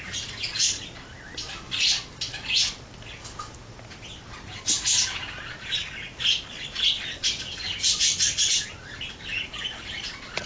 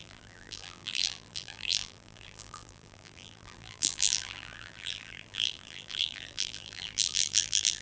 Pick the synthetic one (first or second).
second